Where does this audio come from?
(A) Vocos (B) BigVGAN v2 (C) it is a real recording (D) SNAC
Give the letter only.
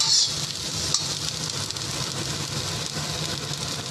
C